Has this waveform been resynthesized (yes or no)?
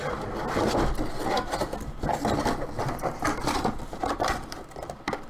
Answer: no